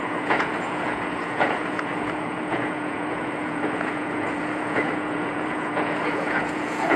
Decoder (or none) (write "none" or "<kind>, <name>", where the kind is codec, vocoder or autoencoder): vocoder, Vocos